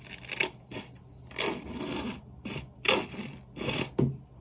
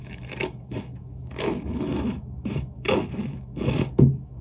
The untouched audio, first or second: first